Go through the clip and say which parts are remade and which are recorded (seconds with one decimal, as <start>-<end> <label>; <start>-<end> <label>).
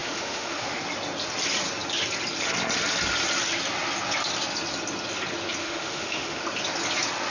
0.0-0.8 remade; 0.8-5.6 recorded; 5.6-6.4 remade; 6.4-7.3 recorded